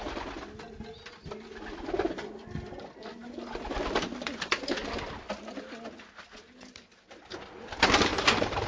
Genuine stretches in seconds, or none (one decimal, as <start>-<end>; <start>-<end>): 0.0-3.2; 4.6-8.1